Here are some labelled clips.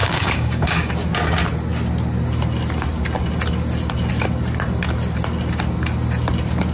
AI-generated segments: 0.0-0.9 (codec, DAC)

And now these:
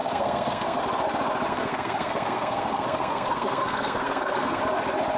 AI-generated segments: 0.0-0.8 (codec, SNAC); 1.5-4.6

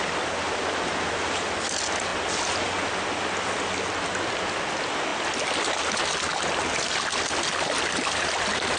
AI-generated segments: none

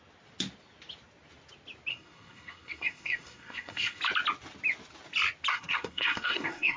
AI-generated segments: 1.9-4.0 (codec, SNAC); 5.5-6.8

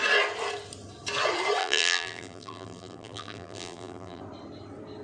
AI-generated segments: 1.6-4.2 (vocoder, BigVGAN v2)